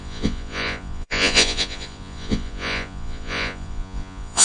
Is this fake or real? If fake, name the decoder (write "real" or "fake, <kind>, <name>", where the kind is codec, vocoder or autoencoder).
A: fake, vocoder, Vocos